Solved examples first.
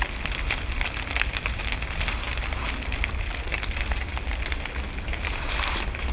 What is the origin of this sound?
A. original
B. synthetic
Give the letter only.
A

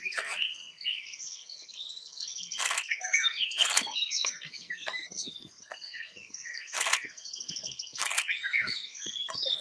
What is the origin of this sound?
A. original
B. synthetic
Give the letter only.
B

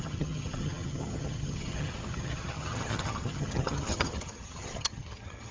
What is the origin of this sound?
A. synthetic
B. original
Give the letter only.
A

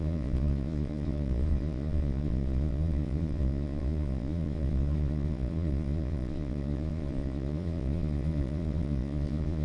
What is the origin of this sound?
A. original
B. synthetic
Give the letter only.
B